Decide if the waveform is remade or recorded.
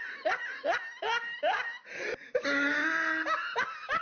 recorded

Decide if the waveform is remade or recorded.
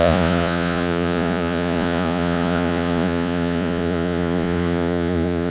remade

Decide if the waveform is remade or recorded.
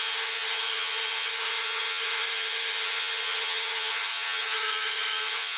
remade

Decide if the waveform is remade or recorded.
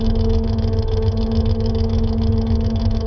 remade